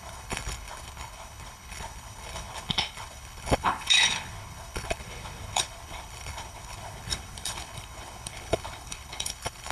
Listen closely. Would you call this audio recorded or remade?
remade